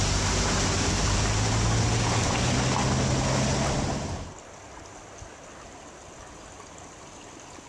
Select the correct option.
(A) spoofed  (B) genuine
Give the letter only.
B